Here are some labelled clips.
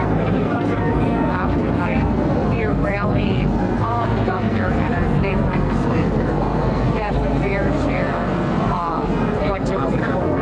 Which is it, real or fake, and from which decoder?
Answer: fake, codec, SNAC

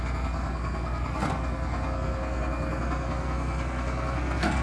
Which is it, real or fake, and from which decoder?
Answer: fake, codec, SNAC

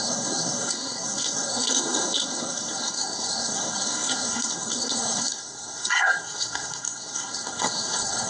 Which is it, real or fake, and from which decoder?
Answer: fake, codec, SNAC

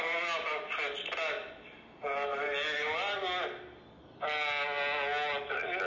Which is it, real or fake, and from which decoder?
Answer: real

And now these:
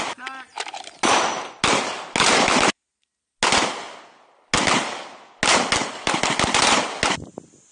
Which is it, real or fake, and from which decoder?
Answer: real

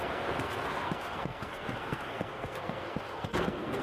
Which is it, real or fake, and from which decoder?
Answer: fake, codec, SNAC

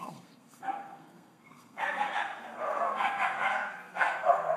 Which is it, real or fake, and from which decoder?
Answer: fake, codec, SNAC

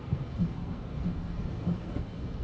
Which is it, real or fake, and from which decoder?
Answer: fake, codec, SNAC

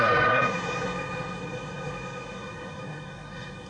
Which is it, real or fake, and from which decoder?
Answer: fake, codec, SNAC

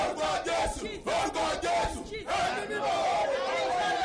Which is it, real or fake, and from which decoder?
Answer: real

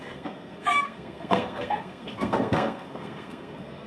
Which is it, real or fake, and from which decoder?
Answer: fake, codec, SNAC